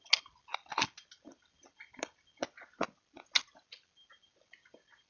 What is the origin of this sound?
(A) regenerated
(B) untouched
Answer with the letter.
B